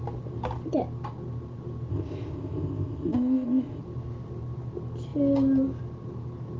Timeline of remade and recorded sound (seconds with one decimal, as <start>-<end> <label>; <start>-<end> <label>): 0.0-1.9 recorded; 1.9-3.8 remade; 3.8-6.6 recorded